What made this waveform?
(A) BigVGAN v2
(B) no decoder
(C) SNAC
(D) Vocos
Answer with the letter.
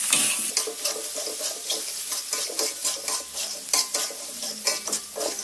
B